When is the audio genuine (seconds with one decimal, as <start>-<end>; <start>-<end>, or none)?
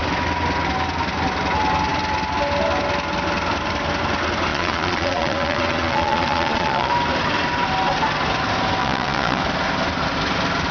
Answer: 0.0-4.5; 6.9-8.8; 9.4-10.7